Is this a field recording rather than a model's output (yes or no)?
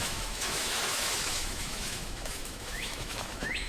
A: no